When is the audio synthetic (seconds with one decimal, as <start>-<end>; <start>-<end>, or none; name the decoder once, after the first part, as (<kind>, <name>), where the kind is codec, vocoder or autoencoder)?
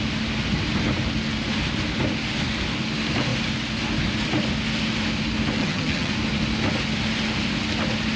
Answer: 5.6-6.1 (vocoder, HiFi-GAN)